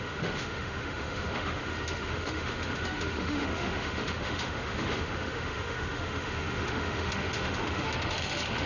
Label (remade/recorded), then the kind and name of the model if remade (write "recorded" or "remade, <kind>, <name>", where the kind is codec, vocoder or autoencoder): remade, autoencoder, DAC-VAE